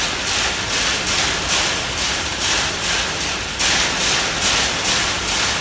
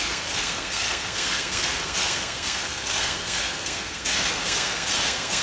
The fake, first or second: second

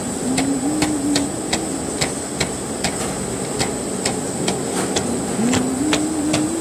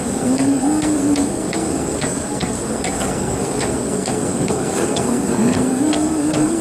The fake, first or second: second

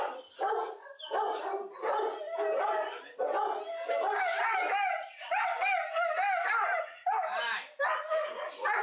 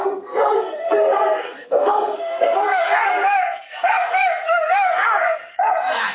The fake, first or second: second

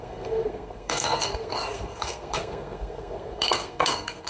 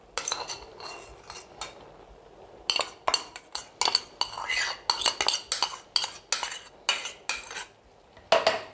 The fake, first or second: first